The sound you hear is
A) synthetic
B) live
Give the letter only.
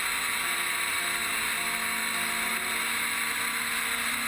B